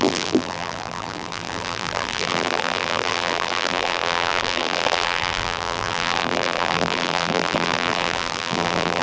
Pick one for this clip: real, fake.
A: fake